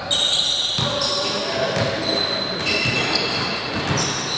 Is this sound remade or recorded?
recorded